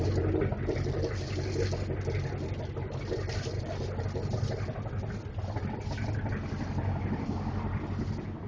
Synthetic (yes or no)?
no